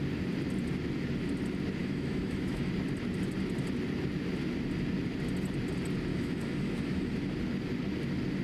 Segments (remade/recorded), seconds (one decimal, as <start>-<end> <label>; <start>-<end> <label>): 0.0-1.8 recorded; 1.8-2.7 remade; 2.7-6.1 recorded; 6.1-7.1 remade; 7.1-8.4 recorded